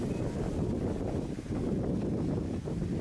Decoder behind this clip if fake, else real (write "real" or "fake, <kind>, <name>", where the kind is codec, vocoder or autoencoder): real